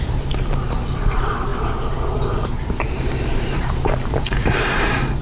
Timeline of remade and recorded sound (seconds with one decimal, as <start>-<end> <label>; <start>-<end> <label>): 0.0-5.2 remade